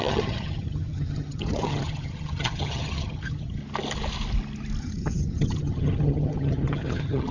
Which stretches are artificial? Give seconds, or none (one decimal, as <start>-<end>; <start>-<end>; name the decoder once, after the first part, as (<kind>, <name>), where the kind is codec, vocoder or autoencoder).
0.0-3.6 (vocoder, HiFi-GAN); 4.8-7.3